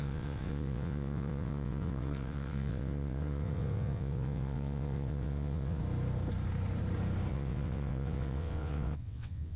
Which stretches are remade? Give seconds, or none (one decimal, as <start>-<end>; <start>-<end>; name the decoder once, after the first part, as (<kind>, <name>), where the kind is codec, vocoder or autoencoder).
0.0-5.8 (vocoder, WaveNeXt); 7.3-9.6